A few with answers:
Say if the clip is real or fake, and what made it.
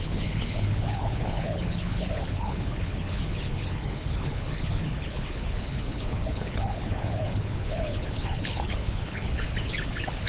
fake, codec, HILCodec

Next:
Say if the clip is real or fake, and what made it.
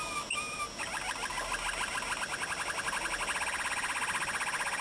real